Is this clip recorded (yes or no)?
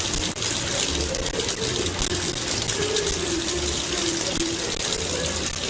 yes